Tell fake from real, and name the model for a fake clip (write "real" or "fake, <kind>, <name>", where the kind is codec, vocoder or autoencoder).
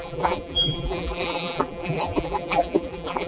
fake, vocoder, BigVGAN v2